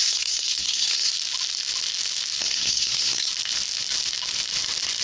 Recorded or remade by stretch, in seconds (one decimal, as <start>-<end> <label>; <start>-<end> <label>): 0.0-1.1 remade; 1.1-2.4 recorded; 2.4-3.3 remade; 3.3-5.0 recorded